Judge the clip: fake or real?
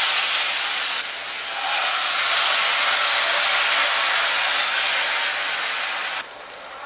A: real